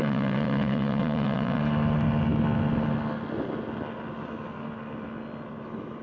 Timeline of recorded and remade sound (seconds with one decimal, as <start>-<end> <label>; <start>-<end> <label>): 0.0-1.6 remade; 1.6-6.0 recorded